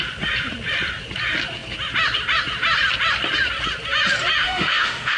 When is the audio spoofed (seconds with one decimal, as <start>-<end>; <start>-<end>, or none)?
4.4-5.2